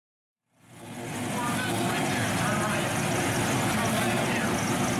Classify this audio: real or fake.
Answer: real